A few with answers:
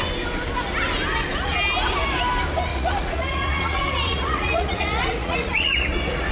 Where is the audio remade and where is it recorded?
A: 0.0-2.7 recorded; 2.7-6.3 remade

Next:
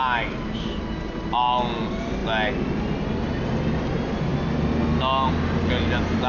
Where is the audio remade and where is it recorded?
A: 0.0-6.3 recorded

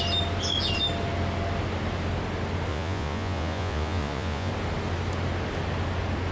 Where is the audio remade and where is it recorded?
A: 0.0-2.7 recorded; 2.7-4.5 remade; 4.5-6.3 recorded

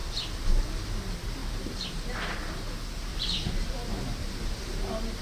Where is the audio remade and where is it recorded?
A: 0.0-1.4 recorded; 1.4-2.7 remade; 2.7-3.1 recorded; 3.1-3.7 remade; 3.7-5.2 recorded

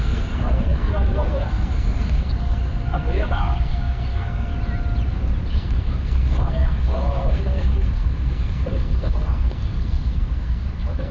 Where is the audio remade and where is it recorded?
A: 0.0-4.5 remade; 4.5-5.5 recorded; 5.5-11.1 remade

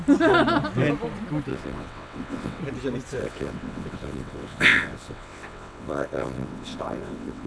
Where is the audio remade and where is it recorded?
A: 0.0-1.5 recorded; 1.5-2.6 remade; 2.6-3.2 recorded; 3.2-7.5 remade